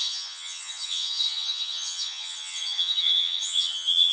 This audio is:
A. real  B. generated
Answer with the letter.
B